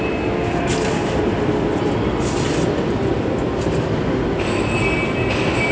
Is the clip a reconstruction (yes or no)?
no